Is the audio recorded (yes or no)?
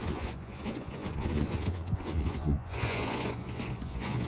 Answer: no